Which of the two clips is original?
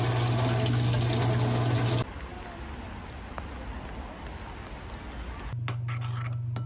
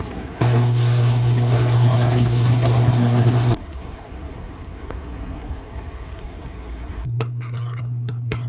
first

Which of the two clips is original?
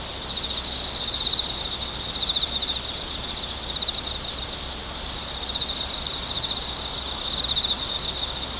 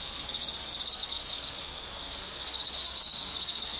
first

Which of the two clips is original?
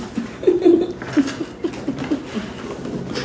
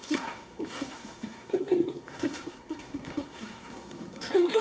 first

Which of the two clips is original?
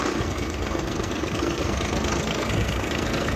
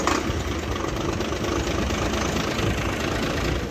second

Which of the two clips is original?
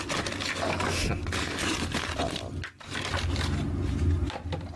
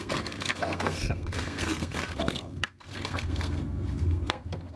first